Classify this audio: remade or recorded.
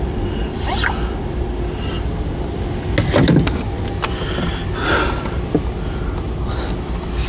recorded